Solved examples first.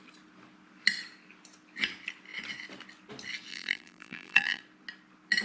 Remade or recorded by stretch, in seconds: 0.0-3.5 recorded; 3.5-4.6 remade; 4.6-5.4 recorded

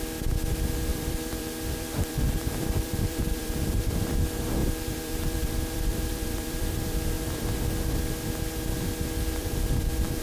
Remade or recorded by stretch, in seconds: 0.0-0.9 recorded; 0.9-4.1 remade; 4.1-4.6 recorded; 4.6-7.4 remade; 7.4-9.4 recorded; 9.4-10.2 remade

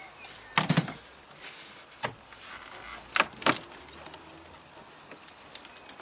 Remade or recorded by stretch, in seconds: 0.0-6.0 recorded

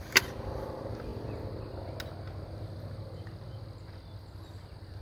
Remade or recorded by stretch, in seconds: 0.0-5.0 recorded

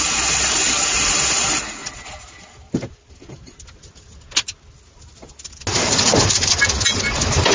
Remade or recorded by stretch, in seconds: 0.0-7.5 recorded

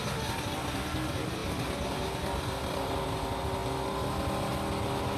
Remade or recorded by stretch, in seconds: 0.0-5.2 recorded

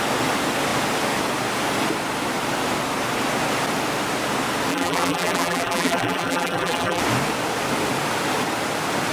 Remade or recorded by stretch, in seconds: 0.0-4.7 recorded; 4.7-7.0 remade; 7.0-9.1 recorded